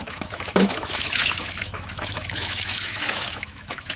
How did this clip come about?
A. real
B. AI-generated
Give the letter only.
B